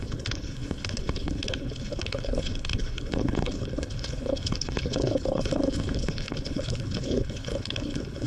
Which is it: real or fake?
fake